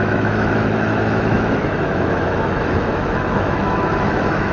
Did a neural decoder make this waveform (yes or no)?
yes